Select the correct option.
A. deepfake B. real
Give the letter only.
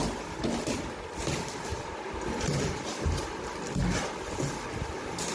B